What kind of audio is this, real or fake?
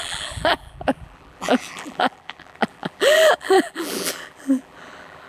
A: fake